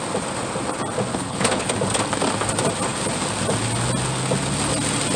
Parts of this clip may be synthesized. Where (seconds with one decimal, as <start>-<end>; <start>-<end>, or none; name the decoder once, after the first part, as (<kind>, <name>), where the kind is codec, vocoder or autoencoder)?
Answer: 1.1-1.7 (codec, HILCodec)